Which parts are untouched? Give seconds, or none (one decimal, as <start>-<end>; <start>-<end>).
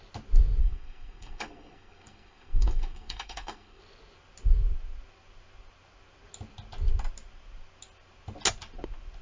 0.0-0.6; 3.8-9.2